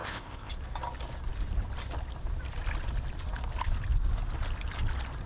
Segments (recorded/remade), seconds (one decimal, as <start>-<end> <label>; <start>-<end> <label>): 0.0-0.5 remade; 0.5-5.3 recorded